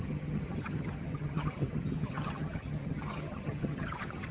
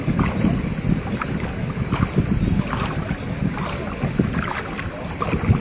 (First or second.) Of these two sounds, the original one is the second